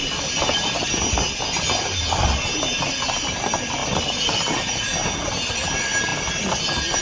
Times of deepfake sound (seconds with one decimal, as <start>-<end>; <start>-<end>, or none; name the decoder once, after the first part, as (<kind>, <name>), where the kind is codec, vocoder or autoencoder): none